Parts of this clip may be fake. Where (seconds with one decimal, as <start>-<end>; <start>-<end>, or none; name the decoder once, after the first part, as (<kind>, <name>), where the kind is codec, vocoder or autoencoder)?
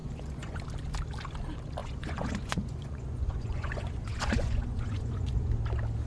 0.0-0.6 (vocoder, Vocos); 1.8-5.5